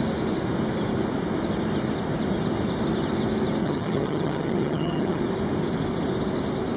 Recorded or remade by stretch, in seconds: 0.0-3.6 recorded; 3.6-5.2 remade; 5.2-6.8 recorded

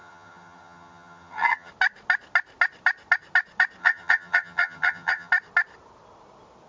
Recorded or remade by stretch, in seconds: 0.0-1.7 remade; 1.7-3.8 recorded; 3.8-5.3 remade; 5.3-6.7 recorded

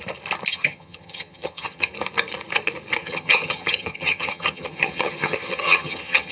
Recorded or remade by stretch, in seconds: 0.0-0.5 recorded; 0.5-1.9 remade; 1.9-3.0 recorded; 3.0-6.3 remade

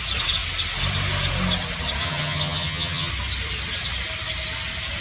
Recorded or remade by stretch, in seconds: 0.0-2.0 recorded; 2.0-3.1 remade; 3.1-5.0 recorded

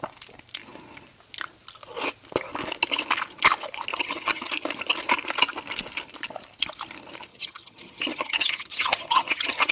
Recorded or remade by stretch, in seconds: 0.0-3.9 recorded; 3.9-4.5 remade; 4.5-7.3 recorded; 7.3-9.7 remade